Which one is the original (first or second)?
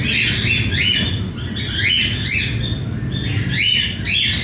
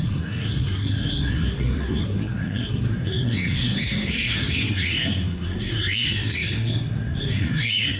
first